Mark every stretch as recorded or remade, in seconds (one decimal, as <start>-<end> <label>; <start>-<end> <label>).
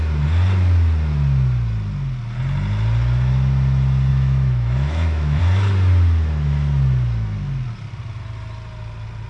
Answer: 0.0-4.1 recorded; 4.1-5.4 remade; 5.4-9.3 recorded